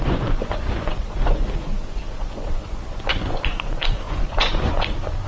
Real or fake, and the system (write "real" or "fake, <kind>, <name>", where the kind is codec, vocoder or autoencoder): fake, vocoder, Vocos